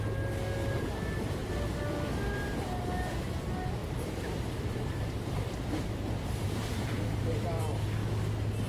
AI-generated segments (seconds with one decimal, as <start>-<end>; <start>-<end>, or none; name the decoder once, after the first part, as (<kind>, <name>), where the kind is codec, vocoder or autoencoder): 3.8-7.6 (vocoder, BigVGAN v2)